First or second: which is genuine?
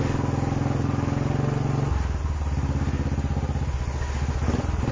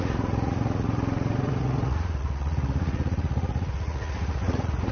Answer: first